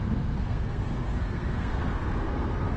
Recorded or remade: remade